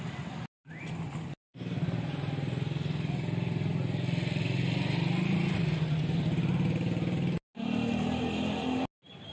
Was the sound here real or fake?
real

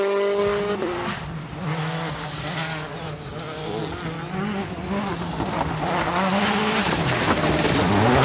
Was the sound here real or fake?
real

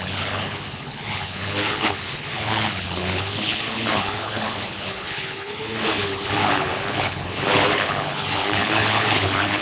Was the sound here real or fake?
fake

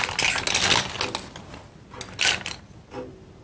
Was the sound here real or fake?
real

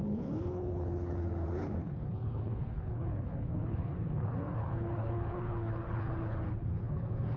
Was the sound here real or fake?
fake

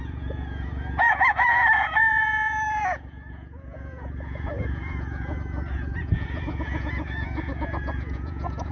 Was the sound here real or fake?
fake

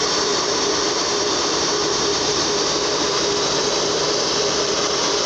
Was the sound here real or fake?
fake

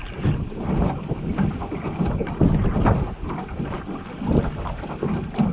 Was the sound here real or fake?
real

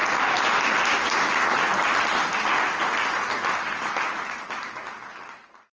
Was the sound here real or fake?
real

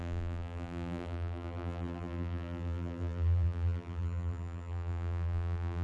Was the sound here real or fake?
fake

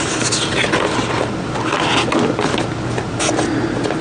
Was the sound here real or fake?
real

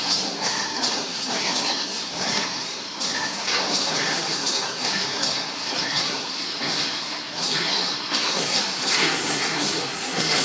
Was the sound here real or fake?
fake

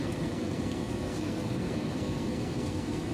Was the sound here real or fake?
fake